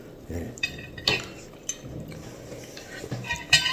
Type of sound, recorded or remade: recorded